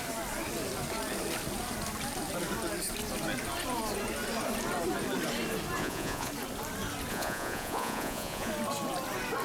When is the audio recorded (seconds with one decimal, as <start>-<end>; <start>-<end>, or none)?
0.0-5.8; 6.3-7.1; 8.5-9.4